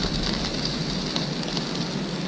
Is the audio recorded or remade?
recorded